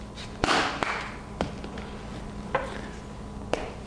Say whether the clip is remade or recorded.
recorded